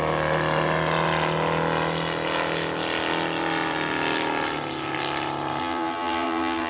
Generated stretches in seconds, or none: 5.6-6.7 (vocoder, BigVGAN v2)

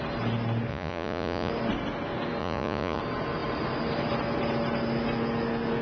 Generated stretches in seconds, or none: 0.7-1.5 (vocoder, Vocos); 2.4-3.0

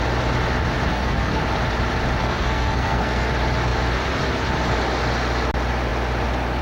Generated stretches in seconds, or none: 0.9-1.4 (codec, SNAC); 2.2-3.3

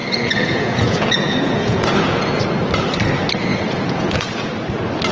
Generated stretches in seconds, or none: 0.0-2.4 (vocoder, Vocos); 3.5-4.5

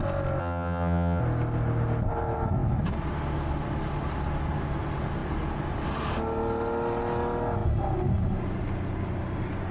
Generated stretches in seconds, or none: 0.4-1.2 (vocoder, HiFi-GAN)

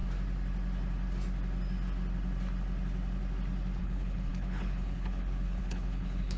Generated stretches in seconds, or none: 3.8-6.4 (codec, HILCodec)

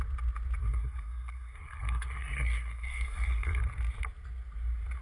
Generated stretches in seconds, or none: 0.6-3.6 (codec, SNAC)